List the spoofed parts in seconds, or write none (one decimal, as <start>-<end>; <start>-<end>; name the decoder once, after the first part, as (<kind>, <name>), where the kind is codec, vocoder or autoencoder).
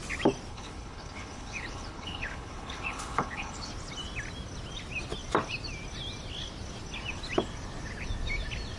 0.5-3.7 (codec, HILCodec)